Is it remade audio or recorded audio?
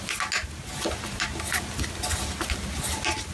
recorded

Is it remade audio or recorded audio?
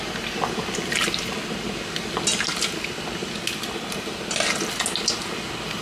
recorded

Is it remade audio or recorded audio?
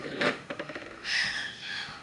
remade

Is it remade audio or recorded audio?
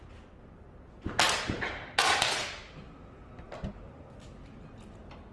recorded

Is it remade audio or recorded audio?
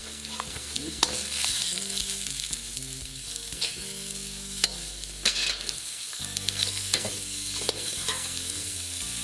remade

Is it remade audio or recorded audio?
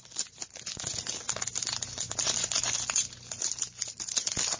recorded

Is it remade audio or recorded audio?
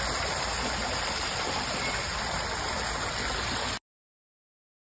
recorded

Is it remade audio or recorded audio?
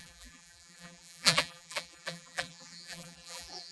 remade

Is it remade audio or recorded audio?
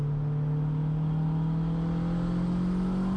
recorded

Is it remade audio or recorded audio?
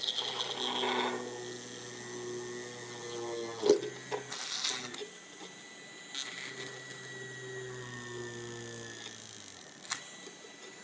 recorded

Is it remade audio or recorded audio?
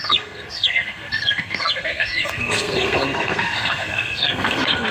remade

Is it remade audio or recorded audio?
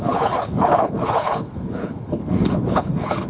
remade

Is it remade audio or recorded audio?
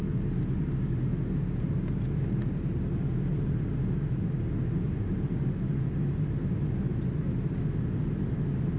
recorded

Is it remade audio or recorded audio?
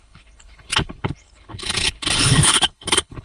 remade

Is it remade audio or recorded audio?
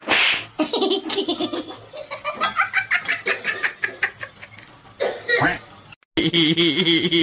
recorded